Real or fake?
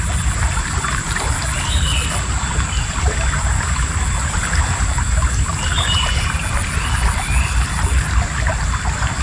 real